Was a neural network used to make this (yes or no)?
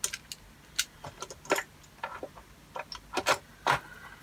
no